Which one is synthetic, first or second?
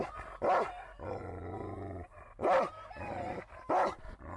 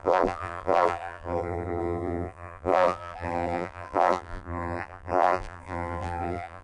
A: second